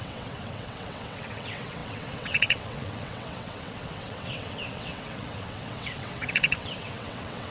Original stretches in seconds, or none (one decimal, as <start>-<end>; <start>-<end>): none